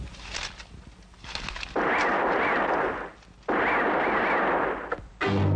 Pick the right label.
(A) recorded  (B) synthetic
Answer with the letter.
A